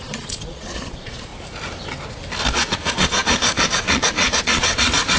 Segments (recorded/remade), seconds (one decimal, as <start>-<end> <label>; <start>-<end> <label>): 0.0-1.3 remade; 1.3-2.5 recorded; 2.5-5.2 remade

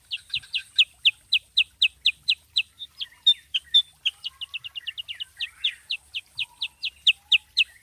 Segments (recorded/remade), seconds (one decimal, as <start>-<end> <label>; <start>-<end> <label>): 0.0-7.8 recorded

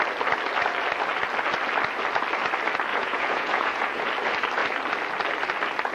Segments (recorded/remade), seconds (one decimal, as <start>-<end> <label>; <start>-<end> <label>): 0.0-2.9 recorded; 2.9-4.1 remade; 4.1-5.9 recorded

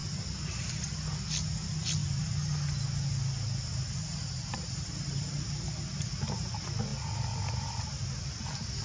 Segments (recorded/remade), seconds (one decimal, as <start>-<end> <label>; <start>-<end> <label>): 0.0-8.8 recorded

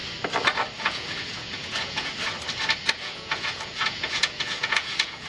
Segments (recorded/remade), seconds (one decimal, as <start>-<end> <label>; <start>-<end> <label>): 0.0-0.8 recorded; 0.8-2.1 remade; 2.1-2.9 recorded; 2.9-5.3 remade

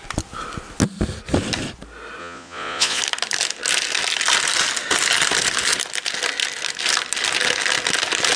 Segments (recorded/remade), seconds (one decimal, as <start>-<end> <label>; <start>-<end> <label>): 0.0-2.2 recorded; 2.2-3.0 remade; 3.0-8.4 recorded

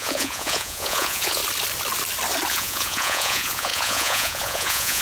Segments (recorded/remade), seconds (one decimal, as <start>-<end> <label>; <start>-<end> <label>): 0.0-1.4 remade; 1.4-2.5 recorded; 2.5-5.0 remade